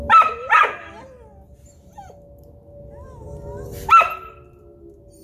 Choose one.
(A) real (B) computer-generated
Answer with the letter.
A